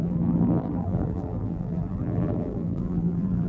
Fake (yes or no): yes